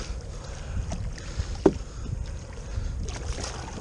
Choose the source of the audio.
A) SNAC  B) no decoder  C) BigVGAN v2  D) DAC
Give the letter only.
B